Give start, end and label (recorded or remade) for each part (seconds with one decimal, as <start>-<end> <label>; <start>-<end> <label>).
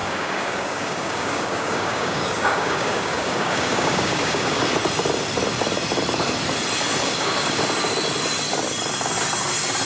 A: 0.0-4.6 remade; 4.6-7.0 recorded; 7.0-7.6 remade; 7.6-9.8 recorded